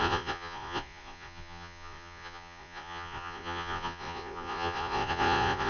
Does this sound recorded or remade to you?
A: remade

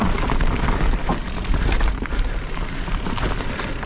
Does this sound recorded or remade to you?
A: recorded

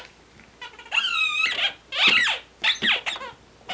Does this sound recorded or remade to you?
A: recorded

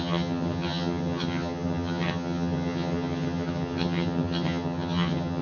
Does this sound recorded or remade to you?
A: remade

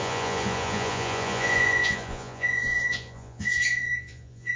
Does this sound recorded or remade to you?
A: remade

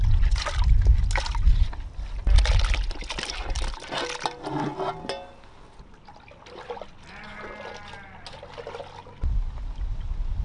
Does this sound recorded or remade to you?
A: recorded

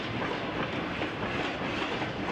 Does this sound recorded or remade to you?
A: recorded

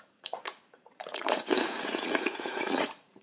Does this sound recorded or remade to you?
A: remade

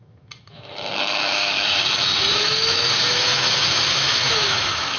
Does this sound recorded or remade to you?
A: remade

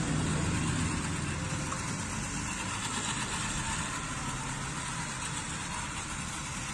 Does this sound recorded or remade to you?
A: recorded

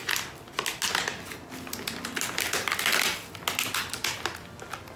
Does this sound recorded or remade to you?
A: recorded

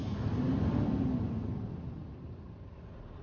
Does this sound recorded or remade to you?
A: recorded